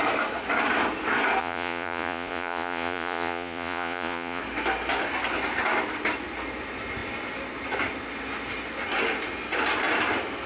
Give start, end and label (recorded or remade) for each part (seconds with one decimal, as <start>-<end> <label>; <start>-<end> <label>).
0.0-1.4 recorded; 1.4-4.4 remade; 4.4-10.5 recorded